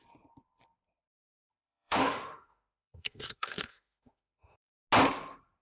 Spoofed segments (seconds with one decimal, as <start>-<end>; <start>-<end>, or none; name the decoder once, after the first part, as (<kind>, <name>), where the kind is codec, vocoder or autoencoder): 1.3-4.7 (autoencoder, DAC-VAE)